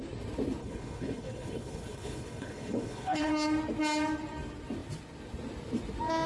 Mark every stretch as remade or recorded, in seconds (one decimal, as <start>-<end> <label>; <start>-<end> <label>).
0.0-0.6 recorded; 0.6-3.3 remade; 3.3-6.3 recorded